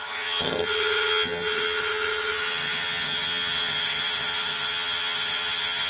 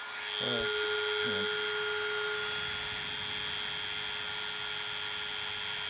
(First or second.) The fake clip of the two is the first